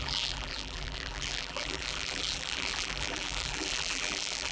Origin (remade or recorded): remade